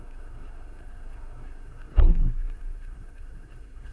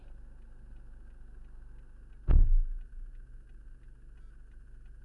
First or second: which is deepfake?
first